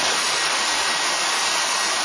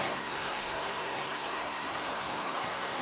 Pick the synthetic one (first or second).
second